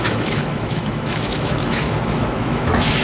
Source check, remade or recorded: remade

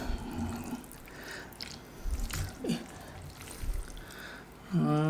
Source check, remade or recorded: recorded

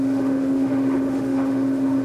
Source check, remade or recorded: remade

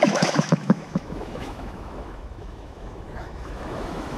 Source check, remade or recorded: remade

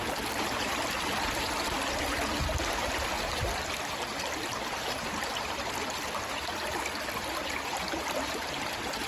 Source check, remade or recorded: recorded